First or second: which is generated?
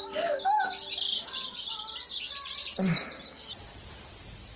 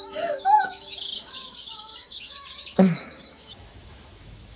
second